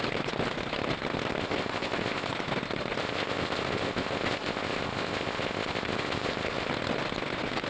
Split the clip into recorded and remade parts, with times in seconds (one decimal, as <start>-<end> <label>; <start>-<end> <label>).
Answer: 0.0-1.4 recorded; 1.4-2.3 remade; 2.3-3.0 recorded; 3.0-6.7 remade; 6.7-7.7 recorded